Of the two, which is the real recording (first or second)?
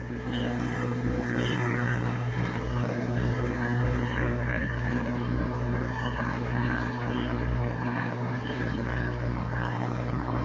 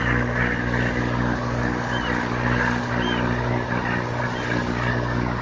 second